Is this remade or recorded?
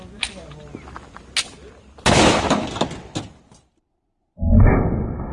recorded